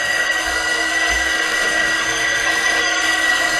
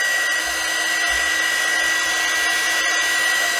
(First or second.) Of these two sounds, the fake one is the first